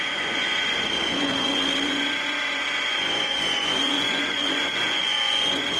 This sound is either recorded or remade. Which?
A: remade